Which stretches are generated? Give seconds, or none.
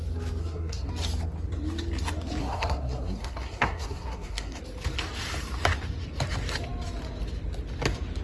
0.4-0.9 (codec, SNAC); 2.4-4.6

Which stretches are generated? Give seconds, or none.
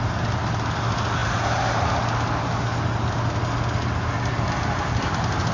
none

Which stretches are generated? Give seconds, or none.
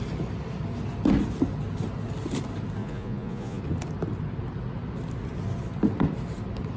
2.8-3.6 (vocoder, Vocos)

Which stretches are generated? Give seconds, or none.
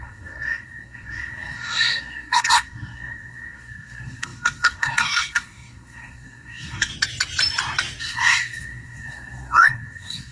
0.0-6.9 (codec, SNAC); 8.0-10.3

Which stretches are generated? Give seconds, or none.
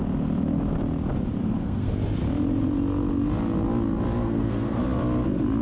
1.4-1.9 (codec, SNAC); 4.2-4.8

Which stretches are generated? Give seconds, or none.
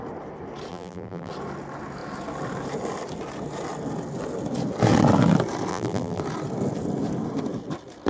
0.7-1.3 (vocoder, BigVGAN v2); 5.7-6.2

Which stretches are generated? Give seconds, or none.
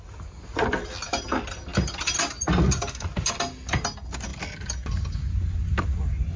none